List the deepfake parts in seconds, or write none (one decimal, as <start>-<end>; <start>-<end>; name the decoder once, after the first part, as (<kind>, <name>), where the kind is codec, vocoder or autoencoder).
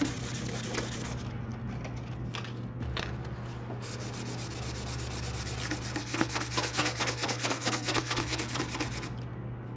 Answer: 6.0-8.6 (codec, SNAC)